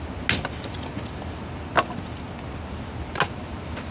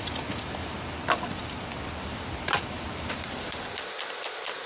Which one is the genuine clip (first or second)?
first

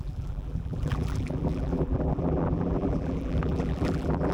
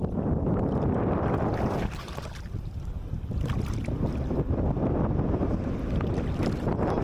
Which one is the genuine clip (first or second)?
second